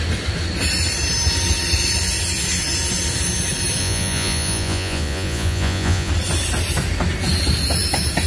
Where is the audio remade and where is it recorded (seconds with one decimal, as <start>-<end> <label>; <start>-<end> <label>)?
0.0-3.8 recorded; 3.8-6.1 remade; 6.1-8.3 recorded